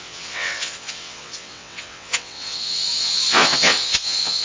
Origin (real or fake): fake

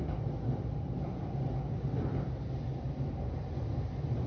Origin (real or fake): real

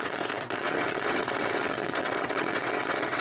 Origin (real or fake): fake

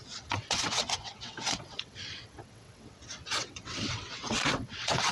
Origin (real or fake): fake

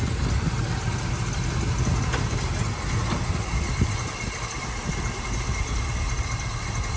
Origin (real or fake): real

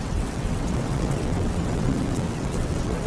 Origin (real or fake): fake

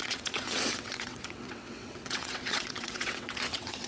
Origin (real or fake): fake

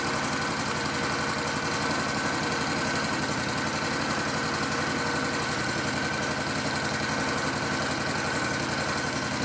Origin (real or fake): real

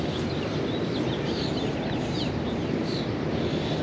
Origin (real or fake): real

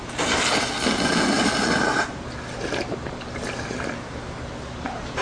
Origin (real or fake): real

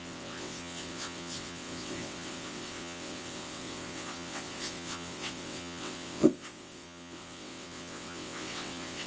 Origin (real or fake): fake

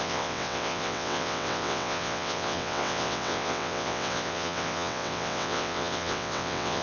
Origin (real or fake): fake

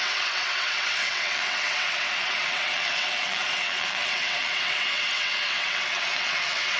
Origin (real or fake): fake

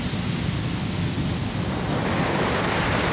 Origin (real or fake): real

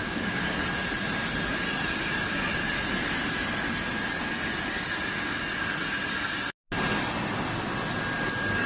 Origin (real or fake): real